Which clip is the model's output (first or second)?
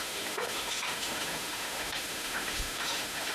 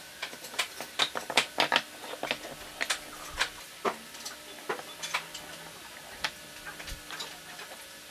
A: first